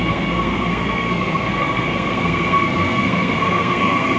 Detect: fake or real fake